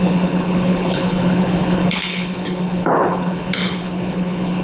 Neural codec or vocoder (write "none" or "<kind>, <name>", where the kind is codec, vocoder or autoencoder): codec, HILCodec